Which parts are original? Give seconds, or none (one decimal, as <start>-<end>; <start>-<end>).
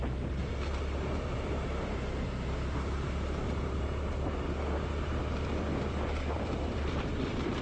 0.4-5.0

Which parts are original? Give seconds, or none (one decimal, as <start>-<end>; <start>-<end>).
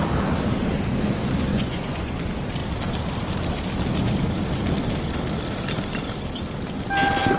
0.0-1.5; 2.1-7.4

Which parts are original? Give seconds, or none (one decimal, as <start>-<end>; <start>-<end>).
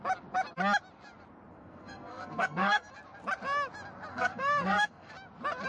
0.0-1.5; 2.9-4.1; 5.1-5.7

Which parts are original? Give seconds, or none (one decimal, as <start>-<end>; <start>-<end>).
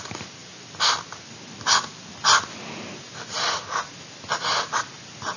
0.0-5.4